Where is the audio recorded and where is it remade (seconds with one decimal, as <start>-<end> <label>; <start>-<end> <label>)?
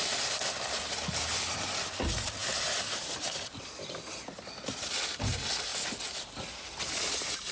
0.0-7.5 recorded